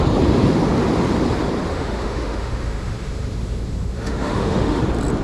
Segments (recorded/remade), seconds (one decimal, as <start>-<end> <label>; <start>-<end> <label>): 0.0-1.7 recorded; 1.7-4.8 remade; 4.8-5.2 recorded